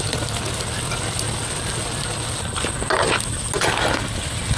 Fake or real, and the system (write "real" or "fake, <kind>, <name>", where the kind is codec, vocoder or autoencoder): real